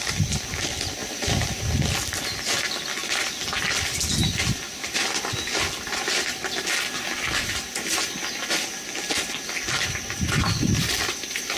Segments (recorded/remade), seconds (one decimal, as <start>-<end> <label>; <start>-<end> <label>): 0.0-11.6 recorded